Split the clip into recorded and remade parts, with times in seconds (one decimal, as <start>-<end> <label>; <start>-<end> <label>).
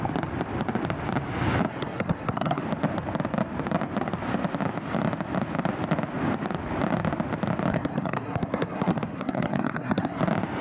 0.0-1.7 recorded; 1.7-2.6 remade; 2.6-7.7 recorded; 7.7-10.2 remade; 10.2-10.6 recorded